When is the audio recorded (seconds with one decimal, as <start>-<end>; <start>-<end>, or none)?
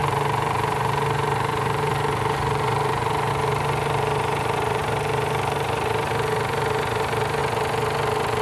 7.4-8.4